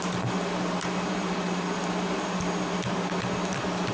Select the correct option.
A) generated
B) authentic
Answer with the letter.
B